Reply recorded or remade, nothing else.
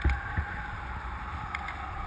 recorded